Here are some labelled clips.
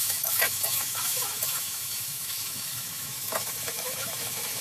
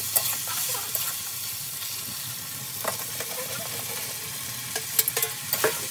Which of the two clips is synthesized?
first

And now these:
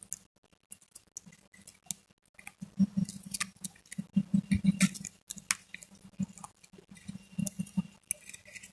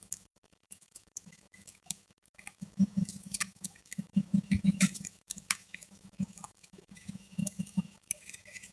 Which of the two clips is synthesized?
second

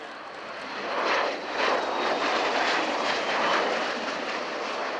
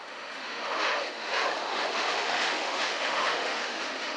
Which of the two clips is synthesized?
second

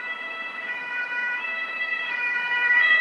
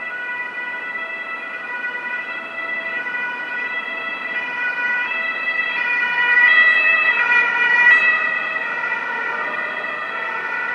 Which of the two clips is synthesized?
first